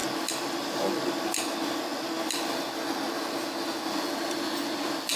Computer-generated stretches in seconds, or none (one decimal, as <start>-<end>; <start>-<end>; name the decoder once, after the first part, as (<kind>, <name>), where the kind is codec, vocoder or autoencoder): none